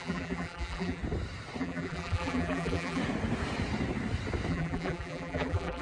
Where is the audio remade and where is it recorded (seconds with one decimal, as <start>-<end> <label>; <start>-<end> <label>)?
0.0-1.0 remade; 1.0-1.6 recorded; 1.6-3.0 remade; 3.0-4.5 recorded; 4.5-5.8 remade